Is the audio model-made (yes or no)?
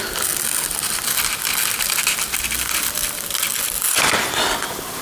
no